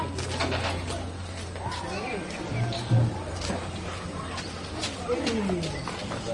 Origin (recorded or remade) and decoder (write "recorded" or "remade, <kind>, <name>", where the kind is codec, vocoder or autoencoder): recorded